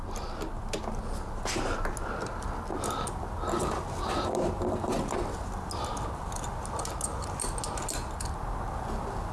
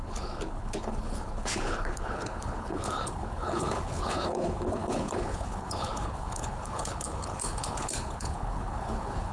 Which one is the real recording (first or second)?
first